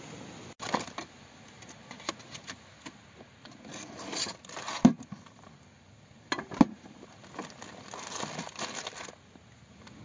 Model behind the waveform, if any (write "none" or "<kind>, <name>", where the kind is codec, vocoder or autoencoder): none